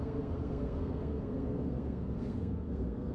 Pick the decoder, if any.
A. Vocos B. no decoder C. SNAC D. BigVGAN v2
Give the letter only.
C